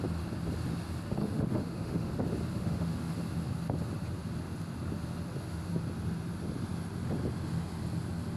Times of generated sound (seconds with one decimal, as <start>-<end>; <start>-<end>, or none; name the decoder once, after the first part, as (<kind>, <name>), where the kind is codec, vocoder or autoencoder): 1.2-2.1 (autoencoder, DAC-VAE); 2.6-3.1